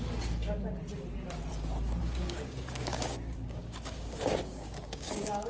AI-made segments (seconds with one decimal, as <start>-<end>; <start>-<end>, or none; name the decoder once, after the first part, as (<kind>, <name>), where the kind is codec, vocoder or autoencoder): 2.0-5.5 (codec, DAC)

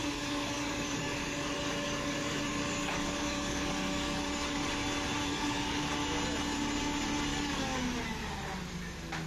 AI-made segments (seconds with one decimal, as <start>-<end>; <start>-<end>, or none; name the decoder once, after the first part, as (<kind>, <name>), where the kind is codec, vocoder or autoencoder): 0.0-4.7 (codec, DAC); 5.3-5.8; 7.3-7.8

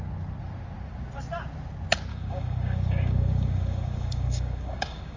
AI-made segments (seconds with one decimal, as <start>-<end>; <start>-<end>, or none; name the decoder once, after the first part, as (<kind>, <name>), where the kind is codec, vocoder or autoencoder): 2.1-5.2 (codec, DAC)

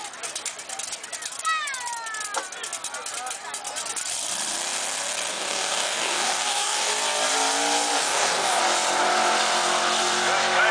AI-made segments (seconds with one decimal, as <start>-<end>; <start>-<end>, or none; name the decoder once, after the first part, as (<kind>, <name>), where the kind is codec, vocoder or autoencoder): 5.3-6.9 (codec, DAC); 8.0-8.6

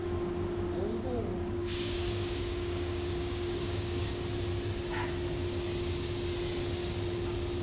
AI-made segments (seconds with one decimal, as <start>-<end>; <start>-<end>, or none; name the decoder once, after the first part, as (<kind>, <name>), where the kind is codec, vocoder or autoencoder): 1.6-4.2 (codec, DAC)

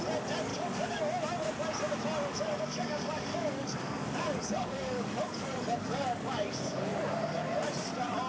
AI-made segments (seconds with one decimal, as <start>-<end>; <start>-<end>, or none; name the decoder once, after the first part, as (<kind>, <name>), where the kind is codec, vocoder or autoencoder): 0.5-1.0 (codec, DAC); 2.3-6.9

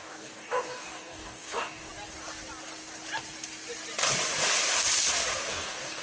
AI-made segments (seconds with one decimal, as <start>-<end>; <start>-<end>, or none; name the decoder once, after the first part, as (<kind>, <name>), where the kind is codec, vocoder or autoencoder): 0.0-1.9 (codec, DAC); 5.5-6.0

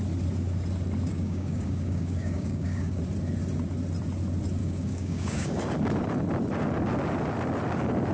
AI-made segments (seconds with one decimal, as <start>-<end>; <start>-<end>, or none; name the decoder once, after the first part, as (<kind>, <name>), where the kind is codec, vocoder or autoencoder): 1.1-3.0 (codec, DAC); 4.6-5.6